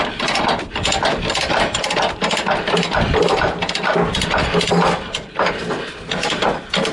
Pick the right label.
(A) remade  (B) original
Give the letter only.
B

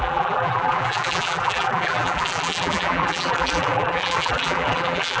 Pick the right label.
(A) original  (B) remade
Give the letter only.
B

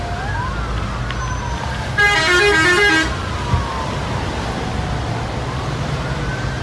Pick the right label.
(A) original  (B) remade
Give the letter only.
A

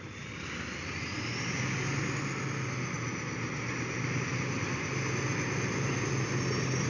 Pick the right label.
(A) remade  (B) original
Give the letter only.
B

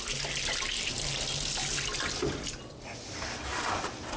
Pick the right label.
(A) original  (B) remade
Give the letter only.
A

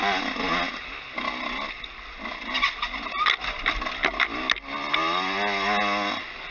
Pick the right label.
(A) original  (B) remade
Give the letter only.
A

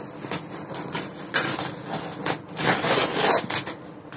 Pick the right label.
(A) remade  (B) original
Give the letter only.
B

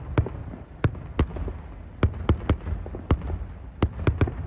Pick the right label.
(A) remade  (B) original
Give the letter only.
B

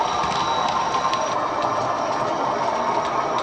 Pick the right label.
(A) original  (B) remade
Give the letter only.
A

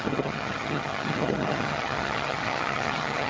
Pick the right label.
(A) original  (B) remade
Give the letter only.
B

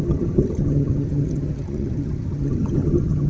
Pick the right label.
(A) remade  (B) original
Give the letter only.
A